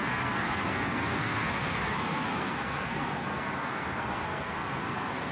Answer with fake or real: fake